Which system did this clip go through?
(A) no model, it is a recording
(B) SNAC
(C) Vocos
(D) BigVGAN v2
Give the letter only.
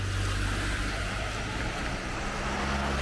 A